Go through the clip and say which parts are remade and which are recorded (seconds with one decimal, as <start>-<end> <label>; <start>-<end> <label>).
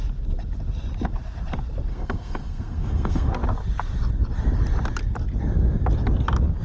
0.0-1.9 recorded; 1.9-3.3 remade; 3.3-6.6 recorded